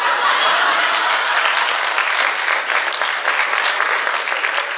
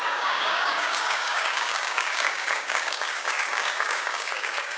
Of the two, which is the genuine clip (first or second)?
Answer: first